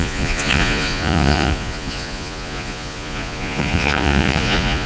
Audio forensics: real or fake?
fake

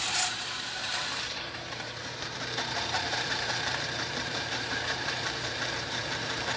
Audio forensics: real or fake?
fake